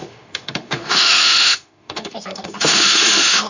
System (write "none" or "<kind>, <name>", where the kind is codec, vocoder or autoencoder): autoencoder, DAC-VAE